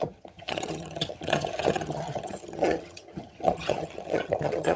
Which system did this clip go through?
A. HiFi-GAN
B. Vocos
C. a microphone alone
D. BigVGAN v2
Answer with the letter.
A